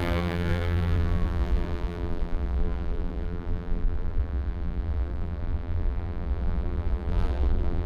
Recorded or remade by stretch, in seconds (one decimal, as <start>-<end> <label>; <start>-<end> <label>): 0.0-7.9 remade